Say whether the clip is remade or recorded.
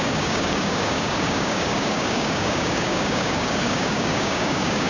remade